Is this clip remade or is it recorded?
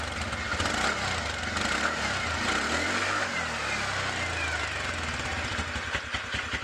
recorded